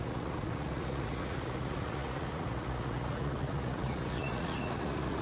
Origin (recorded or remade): remade